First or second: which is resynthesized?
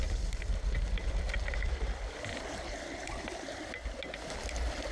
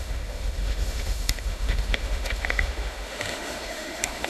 second